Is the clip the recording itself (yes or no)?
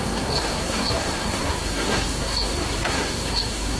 no